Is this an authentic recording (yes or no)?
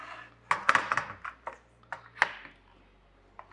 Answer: yes